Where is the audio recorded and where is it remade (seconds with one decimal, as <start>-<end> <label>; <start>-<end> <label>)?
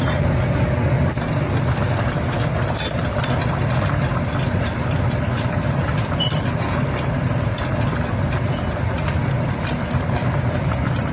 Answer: 0.0-11.1 recorded